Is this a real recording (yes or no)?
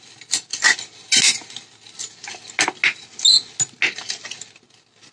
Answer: yes